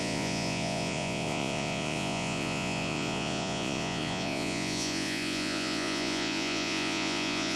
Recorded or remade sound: remade